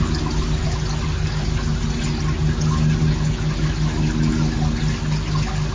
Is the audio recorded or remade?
recorded